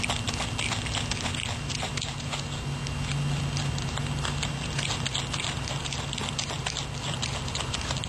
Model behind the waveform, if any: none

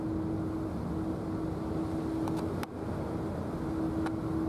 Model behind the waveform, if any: none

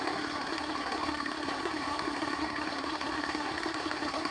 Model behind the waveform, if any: codec, SNAC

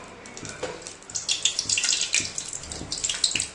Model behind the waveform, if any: none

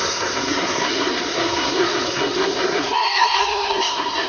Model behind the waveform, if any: codec, SNAC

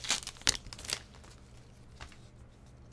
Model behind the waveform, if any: none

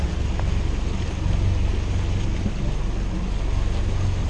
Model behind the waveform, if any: none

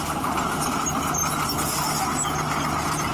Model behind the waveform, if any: none